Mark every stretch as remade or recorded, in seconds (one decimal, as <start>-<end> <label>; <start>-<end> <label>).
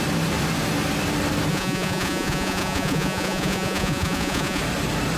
0.0-1.5 recorded; 1.5-4.6 remade; 4.6-5.2 recorded